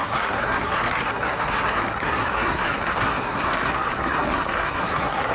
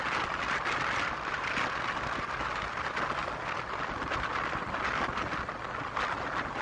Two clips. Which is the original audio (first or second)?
second